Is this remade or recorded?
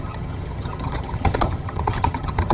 remade